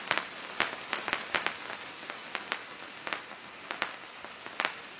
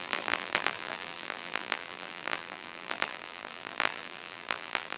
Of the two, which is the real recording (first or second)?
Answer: first